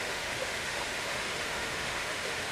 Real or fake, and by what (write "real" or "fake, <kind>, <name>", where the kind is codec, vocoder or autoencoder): fake, autoencoder, DAC-VAE